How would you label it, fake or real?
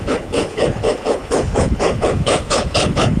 fake